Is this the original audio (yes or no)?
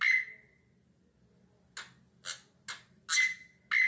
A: yes